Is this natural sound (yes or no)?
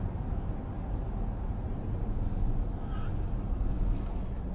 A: yes